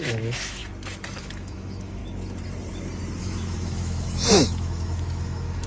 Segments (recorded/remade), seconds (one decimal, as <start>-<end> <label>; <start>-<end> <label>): 0.0-0.6 remade; 0.6-1.2 recorded; 1.2-2.0 remade; 2.0-3.2 recorded; 3.2-5.7 remade